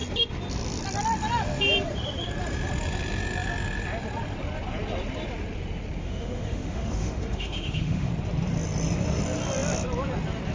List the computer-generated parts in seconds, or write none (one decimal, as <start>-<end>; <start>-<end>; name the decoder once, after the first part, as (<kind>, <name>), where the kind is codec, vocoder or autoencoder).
6.0-8.1 (autoencoder, DAC-VAE)